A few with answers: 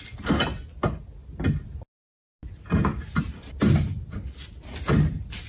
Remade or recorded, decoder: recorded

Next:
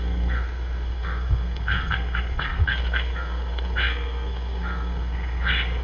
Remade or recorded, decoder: remade, codec, SNAC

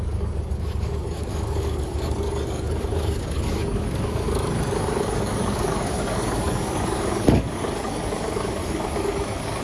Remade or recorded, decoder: remade, codec, DAC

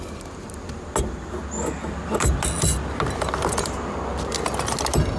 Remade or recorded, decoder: recorded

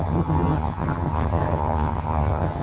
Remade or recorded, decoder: remade, vocoder, HiFi-GAN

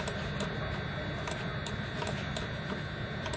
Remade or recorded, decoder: recorded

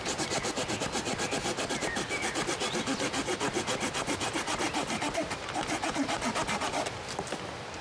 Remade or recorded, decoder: recorded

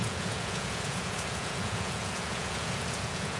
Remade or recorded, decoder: remade, vocoder, Vocos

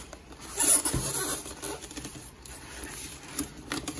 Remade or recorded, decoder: remade, vocoder, BigVGAN v2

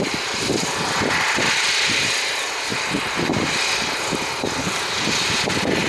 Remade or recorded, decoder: recorded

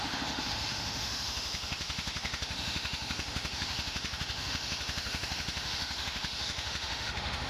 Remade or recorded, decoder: remade, autoencoder, DAC-VAE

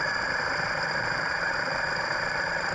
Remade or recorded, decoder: recorded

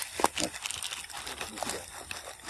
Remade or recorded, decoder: recorded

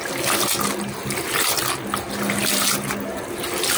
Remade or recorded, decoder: recorded